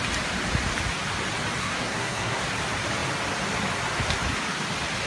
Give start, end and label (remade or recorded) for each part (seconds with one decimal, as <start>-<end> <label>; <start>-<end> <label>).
0.0-1.6 recorded; 1.6-2.4 remade; 2.4-5.1 recorded